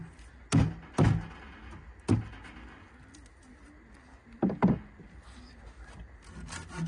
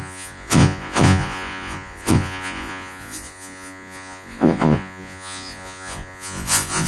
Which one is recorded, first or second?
first